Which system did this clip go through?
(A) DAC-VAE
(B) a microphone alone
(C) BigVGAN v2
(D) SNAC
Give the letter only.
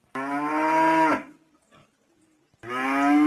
B